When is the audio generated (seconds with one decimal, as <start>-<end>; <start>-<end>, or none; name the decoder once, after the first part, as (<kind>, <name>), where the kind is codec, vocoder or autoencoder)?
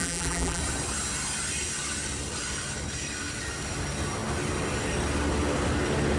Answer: 0.0-0.6 (vocoder, BigVGAN v2)